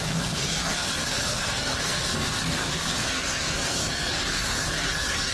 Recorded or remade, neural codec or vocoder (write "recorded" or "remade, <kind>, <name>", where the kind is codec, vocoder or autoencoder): remade, codec, SNAC